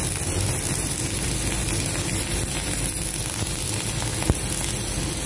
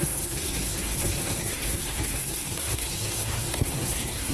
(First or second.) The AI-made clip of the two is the second